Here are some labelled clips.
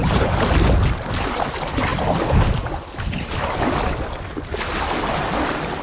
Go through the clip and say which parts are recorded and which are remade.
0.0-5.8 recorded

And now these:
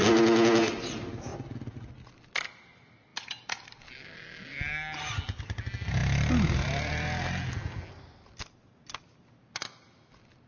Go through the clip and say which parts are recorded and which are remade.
0.0-3.1 recorded; 3.1-3.9 remade; 3.9-10.5 recorded

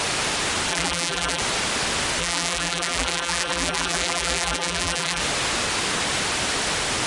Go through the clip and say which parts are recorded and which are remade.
0.0-0.7 recorded; 0.7-1.4 remade; 1.4-2.2 recorded; 2.2-5.2 remade; 5.2-7.1 recorded

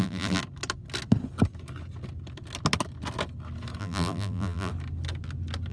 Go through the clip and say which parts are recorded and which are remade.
0.0-0.4 remade; 0.4-3.8 recorded; 3.8-4.7 remade; 4.7-5.7 recorded